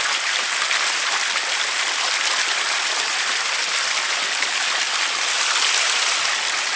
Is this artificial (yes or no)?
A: no